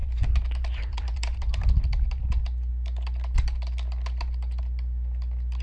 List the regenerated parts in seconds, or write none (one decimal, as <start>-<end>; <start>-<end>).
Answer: 0.0-1.5